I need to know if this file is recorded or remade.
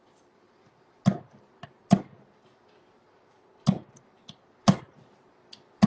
recorded